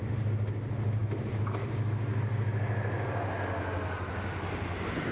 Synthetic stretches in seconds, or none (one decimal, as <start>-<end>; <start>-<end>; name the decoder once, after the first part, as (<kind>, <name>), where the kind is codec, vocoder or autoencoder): none